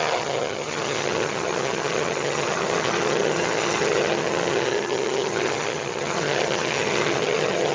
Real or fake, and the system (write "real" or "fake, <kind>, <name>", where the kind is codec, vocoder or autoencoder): fake, vocoder, HiFi-GAN